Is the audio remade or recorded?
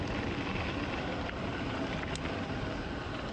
recorded